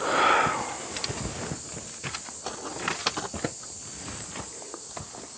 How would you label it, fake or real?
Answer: real